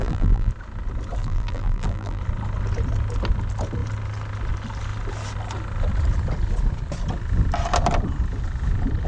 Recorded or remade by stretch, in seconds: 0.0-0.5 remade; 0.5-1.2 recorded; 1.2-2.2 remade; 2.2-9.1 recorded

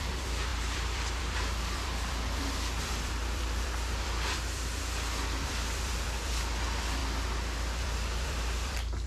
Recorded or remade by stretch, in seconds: 0.0-7.0 remade; 7.0-7.8 recorded; 7.8-9.1 remade

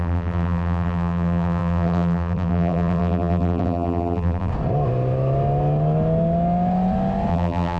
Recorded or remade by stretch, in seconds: 0.0-4.5 remade; 4.5-7.3 recorded; 7.3-7.8 remade

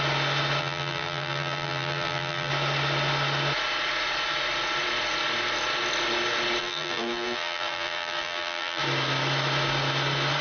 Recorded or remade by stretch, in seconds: 0.0-0.6 recorded; 0.6-2.5 remade; 2.5-6.6 recorded; 6.6-8.8 remade; 8.8-10.4 recorded